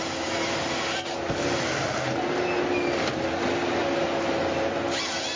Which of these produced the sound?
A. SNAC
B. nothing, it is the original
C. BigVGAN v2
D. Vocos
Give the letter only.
B